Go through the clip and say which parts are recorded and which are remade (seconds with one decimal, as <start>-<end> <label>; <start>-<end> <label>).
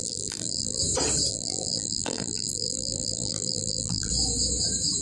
0.0-0.8 remade; 0.8-1.3 recorded; 1.3-4.1 remade; 4.1-5.0 recorded